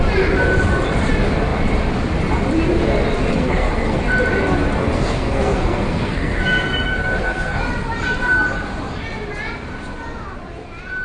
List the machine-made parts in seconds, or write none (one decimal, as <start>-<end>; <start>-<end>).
3.3-4.0; 4.8-7.6